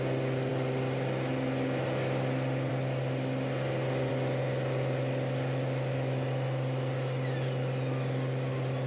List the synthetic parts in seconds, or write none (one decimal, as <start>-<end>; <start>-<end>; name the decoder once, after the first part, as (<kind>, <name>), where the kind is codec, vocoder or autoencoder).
none